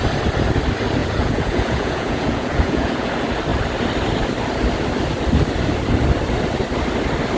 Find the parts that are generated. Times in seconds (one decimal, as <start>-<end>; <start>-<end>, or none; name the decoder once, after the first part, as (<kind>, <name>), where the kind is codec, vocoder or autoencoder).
1.0-3.1 (vocoder, Vocos)